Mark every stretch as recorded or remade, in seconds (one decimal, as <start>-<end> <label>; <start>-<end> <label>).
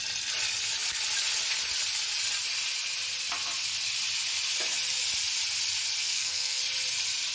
0.0-6.0 recorded; 6.0-6.6 remade; 6.6-7.3 recorded